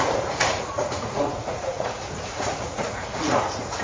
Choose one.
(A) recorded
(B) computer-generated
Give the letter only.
B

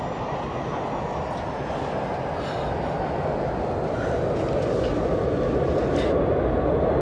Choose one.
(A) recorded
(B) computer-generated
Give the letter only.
A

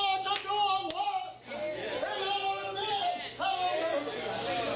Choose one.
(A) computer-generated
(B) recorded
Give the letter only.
B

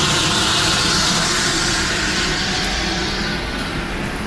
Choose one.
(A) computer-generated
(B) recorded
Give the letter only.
B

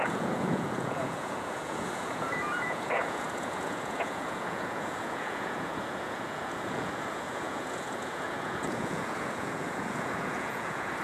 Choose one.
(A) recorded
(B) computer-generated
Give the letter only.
B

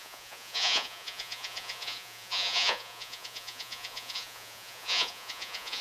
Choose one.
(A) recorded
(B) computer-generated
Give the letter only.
B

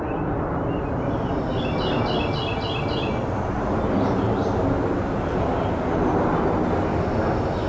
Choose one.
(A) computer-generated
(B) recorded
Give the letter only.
B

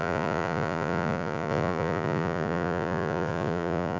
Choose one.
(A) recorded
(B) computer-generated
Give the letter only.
B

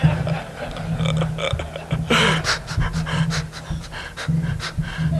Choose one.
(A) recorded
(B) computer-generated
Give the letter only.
A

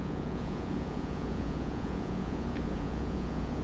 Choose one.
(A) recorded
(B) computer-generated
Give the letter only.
B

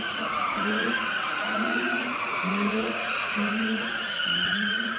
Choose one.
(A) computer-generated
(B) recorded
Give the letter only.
A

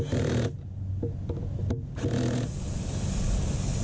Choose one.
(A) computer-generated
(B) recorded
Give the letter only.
B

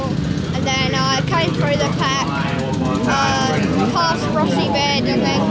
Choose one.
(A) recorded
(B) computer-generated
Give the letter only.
A